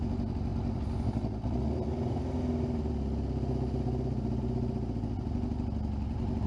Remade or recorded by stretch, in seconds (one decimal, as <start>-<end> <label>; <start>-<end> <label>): 0.0-6.5 recorded